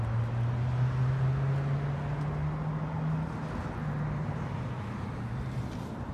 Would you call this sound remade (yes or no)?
no